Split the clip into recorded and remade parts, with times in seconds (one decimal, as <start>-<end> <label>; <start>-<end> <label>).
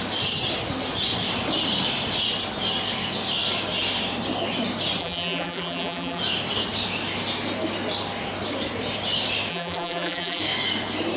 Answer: 0.0-5.0 recorded; 5.0-6.2 remade; 6.2-9.5 recorded; 9.5-10.4 remade; 10.4-11.2 recorded